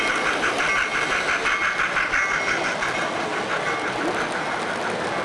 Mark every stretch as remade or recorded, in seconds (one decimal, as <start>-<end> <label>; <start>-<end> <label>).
0.0-5.2 recorded